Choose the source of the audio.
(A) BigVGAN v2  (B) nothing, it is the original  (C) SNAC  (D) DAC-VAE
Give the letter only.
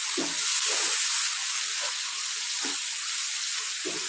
B